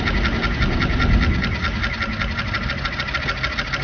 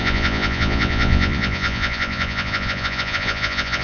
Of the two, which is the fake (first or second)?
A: second